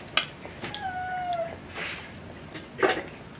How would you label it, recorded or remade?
recorded